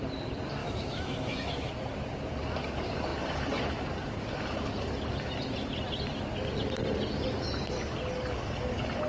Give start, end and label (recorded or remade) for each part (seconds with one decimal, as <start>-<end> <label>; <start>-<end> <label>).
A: 0.0-0.6 recorded; 0.6-1.7 remade; 1.7-9.1 recorded